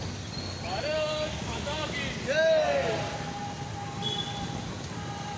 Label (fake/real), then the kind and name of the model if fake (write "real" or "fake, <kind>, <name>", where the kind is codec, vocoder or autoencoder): real